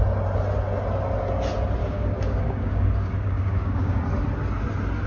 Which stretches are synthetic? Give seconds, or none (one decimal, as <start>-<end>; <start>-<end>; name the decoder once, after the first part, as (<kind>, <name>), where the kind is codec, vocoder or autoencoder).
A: 1.8-4.0 (codec, DAC)